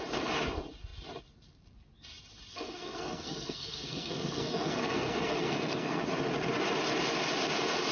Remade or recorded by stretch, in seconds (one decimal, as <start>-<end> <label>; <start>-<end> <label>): 0.0-2.5 recorded; 2.5-6.0 remade; 6.0-7.9 recorded